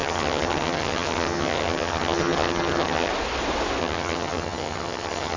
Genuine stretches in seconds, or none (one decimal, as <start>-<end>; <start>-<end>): 3.1-3.8